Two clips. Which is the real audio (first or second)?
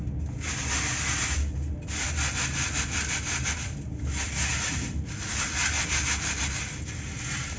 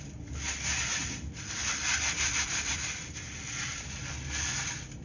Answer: first